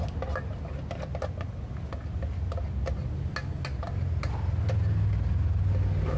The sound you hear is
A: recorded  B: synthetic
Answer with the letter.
A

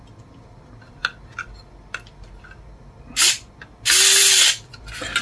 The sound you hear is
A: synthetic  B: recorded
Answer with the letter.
B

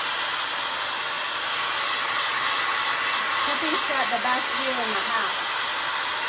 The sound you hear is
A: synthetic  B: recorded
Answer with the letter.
B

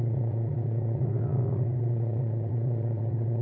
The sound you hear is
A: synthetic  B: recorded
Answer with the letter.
A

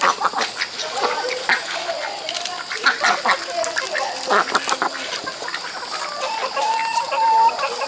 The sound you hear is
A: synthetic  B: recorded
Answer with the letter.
B